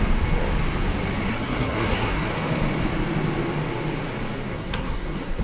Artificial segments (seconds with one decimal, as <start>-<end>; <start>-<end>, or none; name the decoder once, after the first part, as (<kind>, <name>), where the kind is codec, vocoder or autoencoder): 1.3-2.3 (codec, SNAC); 4.5-5.4